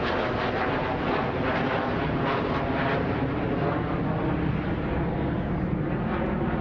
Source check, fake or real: real